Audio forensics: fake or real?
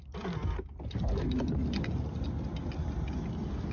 real